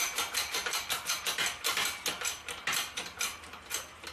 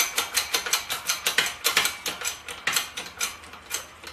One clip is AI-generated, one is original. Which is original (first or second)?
second